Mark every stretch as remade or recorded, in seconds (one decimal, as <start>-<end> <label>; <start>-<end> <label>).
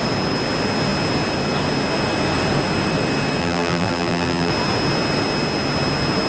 0.0-3.4 recorded; 3.4-4.5 remade; 4.5-6.3 recorded